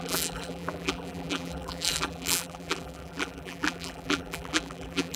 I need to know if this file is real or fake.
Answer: fake